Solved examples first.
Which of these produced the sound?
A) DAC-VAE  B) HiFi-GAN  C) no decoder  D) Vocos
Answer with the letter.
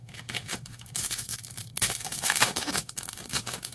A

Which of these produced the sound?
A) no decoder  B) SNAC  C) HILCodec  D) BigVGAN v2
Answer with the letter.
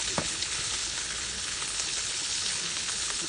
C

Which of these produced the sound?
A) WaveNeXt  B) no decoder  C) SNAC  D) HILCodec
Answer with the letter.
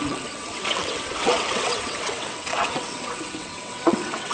A